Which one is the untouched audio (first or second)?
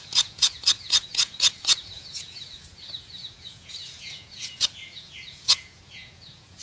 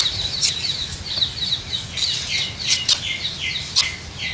second